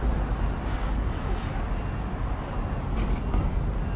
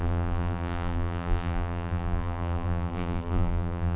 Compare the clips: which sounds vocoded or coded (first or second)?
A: second